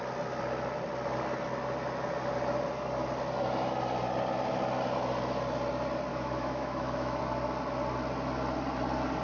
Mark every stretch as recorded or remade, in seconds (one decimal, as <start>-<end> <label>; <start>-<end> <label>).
0.0-6.1 recorded; 6.1-7.2 remade; 7.2-9.2 recorded